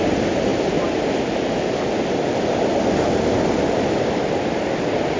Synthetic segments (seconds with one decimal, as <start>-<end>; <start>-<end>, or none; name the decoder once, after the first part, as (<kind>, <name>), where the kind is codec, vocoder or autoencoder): none